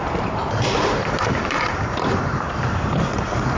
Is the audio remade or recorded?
remade